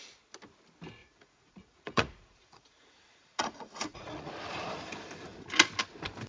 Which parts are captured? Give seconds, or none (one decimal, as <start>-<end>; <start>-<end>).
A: 0.0-1.0; 4.3-6.3